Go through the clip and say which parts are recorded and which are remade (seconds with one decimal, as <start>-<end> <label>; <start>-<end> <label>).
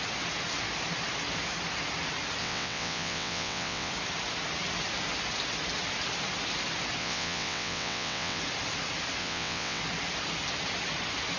0.0-2.4 recorded; 2.4-3.9 remade; 3.9-7.0 recorded; 7.0-8.4 remade; 8.4-9.2 recorded; 9.2-9.8 remade; 9.8-11.4 recorded